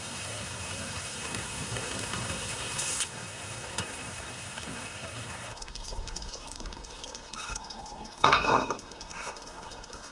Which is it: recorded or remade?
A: remade